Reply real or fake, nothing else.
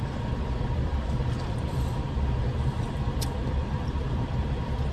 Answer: fake